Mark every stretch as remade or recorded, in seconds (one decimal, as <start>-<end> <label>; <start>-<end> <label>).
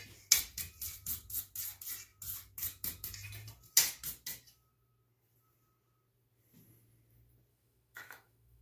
0.0-7.5 recorded; 7.5-8.6 remade